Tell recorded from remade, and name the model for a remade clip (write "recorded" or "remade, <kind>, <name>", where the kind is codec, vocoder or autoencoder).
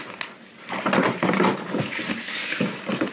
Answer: recorded